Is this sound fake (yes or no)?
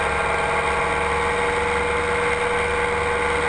no